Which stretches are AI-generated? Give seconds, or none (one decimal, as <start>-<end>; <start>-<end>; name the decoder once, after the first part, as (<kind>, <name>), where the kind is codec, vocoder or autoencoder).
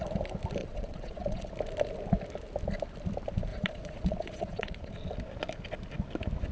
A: 0.6-1.5 (vocoder, Vocos); 3.5-4.9